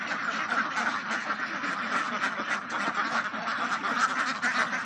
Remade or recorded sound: recorded